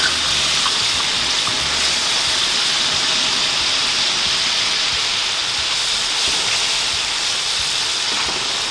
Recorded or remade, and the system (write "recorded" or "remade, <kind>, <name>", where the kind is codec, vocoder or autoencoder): recorded